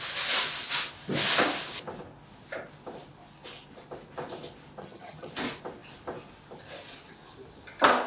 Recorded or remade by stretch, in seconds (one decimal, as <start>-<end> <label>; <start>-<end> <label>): 0.0-4.8 recorded; 4.8-5.3 remade; 5.3-8.1 recorded